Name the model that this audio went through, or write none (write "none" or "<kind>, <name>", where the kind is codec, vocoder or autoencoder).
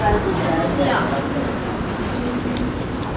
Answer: none